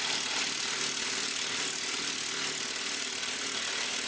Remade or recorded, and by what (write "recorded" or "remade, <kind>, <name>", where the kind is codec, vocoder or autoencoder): recorded